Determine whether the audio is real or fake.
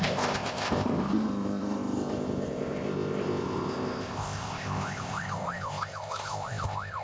fake